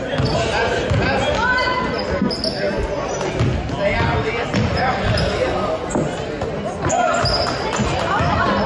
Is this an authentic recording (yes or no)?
yes